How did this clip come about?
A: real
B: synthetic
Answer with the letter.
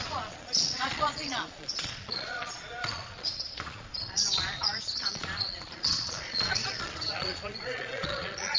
B